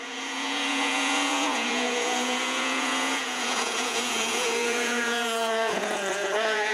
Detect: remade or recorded remade